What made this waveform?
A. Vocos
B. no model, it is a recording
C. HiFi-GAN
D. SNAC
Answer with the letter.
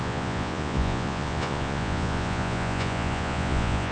A